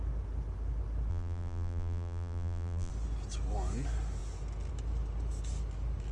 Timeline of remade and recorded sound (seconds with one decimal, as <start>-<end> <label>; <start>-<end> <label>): 0.0-1.1 recorded; 1.1-2.9 remade; 2.9-6.1 recorded